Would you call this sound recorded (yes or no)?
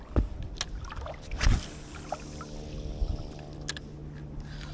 yes